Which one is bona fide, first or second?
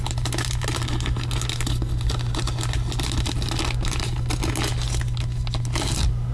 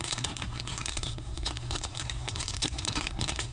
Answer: first